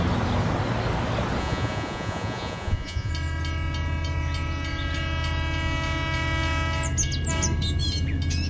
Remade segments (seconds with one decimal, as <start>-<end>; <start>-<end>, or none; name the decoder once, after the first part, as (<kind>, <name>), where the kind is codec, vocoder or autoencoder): 1.4-3.1 (vocoder, Vocos)